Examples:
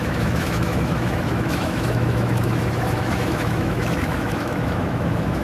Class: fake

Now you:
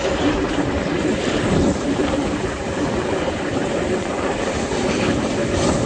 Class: real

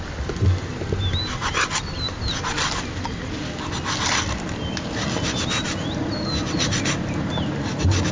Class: real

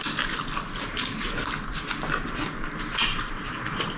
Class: real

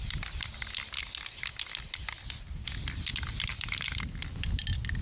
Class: real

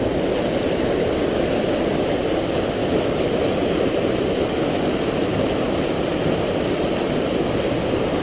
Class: real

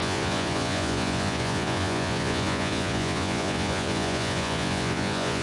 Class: fake